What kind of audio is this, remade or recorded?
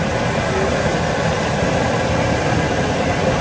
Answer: recorded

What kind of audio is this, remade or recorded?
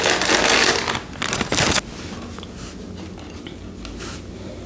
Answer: recorded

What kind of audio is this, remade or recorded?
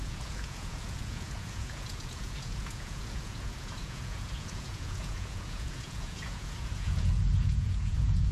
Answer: remade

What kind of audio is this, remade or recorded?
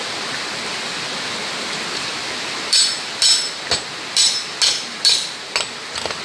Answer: recorded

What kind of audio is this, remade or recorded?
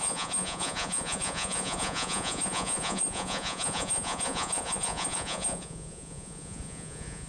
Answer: remade